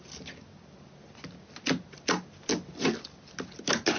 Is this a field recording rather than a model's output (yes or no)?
yes